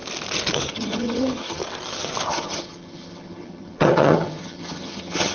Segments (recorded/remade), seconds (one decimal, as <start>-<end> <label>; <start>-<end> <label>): 0.0-0.7 recorded; 0.7-1.6 remade; 1.6-2.3 recorded; 2.3-5.3 remade